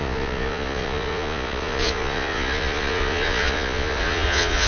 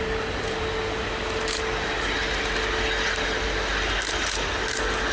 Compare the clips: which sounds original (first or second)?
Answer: second